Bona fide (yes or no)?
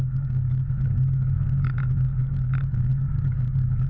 no